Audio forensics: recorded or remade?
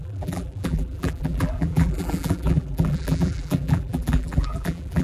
remade